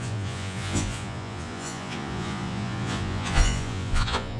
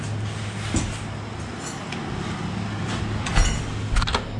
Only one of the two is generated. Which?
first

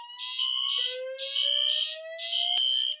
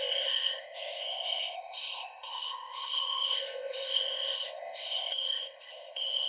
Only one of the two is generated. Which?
second